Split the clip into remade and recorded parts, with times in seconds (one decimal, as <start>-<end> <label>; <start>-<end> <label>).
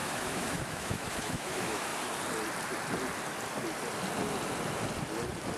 0.0-1.9 remade; 1.9-5.6 recorded